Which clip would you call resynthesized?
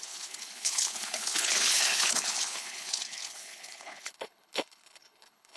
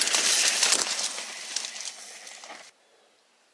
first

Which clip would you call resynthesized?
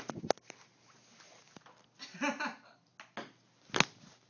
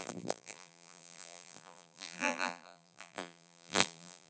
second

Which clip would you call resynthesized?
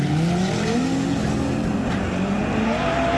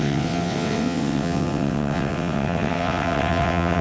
second